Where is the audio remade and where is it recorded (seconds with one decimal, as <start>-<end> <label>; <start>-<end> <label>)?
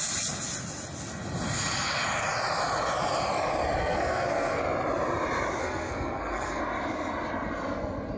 0.0-3.8 recorded; 3.8-4.6 remade; 4.6-5.6 recorded; 5.6-6.6 remade; 6.6-8.2 recorded